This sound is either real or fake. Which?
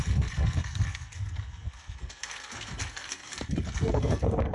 fake